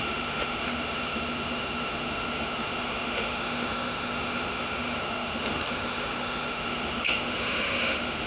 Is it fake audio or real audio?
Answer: fake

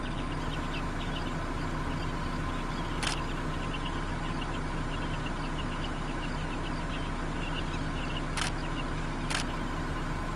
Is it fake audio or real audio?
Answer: real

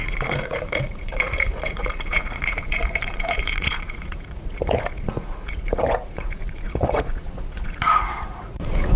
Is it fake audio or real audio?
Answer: fake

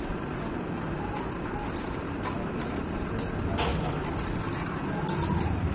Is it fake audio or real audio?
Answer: real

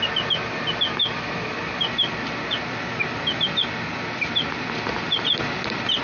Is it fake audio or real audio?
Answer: real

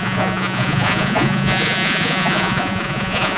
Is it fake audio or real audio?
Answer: fake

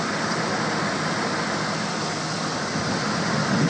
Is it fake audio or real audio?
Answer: real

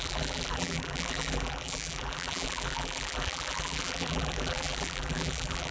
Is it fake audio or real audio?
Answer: fake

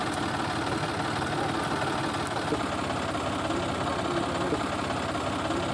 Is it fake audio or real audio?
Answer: real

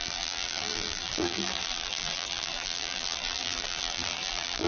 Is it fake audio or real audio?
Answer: fake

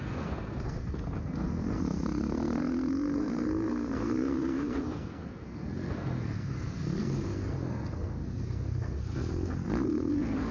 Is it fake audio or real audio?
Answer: fake